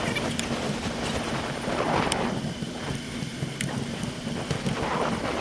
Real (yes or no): yes